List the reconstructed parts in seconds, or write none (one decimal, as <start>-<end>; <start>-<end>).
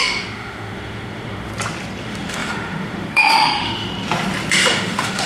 0.0-1.5; 2.0-3.9; 4.5-5.3